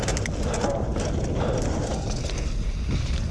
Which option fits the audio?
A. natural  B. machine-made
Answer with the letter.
A